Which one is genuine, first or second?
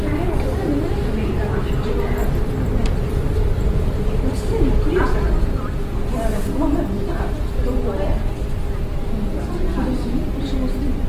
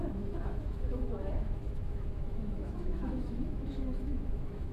first